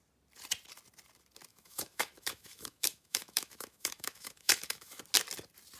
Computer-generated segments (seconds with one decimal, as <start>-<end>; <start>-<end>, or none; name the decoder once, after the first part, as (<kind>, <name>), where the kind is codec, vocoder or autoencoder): 1.5-5.0 (autoencoder, DAC-VAE)

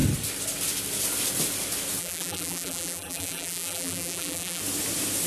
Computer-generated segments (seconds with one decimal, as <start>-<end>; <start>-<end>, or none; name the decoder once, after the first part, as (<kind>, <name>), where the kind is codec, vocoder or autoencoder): 2.0-4.6 (vocoder, BigVGAN v2)

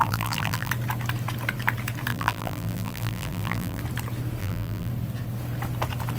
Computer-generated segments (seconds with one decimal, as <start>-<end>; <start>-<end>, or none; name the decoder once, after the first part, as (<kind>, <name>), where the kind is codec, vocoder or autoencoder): 0.0-0.7 (vocoder, BigVGAN v2); 2.1-3.8; 4.4-4.9

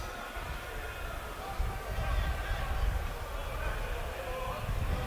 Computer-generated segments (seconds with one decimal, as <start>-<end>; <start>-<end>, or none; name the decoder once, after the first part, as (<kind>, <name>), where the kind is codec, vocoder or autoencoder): none

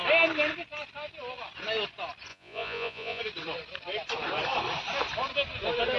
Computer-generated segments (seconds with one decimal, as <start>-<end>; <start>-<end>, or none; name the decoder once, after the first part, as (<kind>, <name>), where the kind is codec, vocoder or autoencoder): 2.3-3.2 (vocoder, Vocos)